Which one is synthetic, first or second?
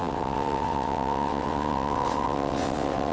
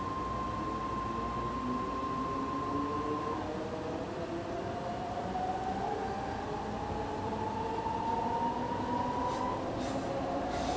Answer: first